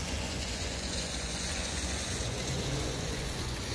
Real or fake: fake